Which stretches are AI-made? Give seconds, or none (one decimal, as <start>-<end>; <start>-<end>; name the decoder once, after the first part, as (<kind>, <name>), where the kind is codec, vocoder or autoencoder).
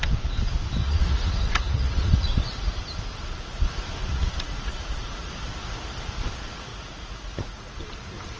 0.8-2.8 (vocoder, Vocos); 4.0-5.3; 6.7-7.8